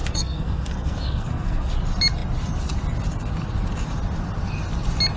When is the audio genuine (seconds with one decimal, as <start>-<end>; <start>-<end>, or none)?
1.7-5.2